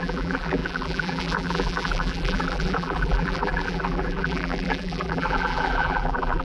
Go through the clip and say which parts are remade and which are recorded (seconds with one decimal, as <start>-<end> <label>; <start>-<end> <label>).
0.0-6.4 remade